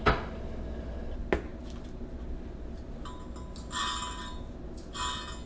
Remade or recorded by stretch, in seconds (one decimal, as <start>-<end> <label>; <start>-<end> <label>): 0.0-5.5 recorded